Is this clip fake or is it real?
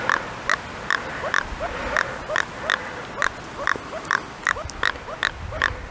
real